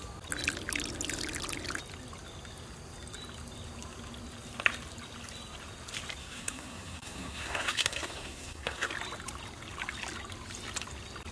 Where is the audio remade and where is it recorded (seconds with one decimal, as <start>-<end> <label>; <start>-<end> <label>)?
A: 0.0-6.2 recorded; 6.2-8.9 remade; 8.9-11.3 recorded